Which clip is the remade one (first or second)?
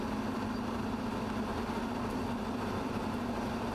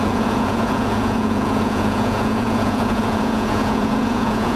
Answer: second